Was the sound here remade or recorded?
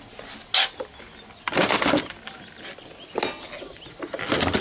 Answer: recorded